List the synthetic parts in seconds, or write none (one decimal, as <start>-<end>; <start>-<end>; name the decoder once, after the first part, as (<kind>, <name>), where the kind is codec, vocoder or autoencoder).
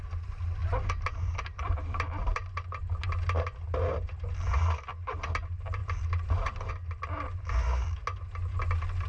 0.6-2.8 (vocoder, BigVGAN v2); 5.8-6.7